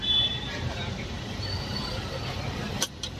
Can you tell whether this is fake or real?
real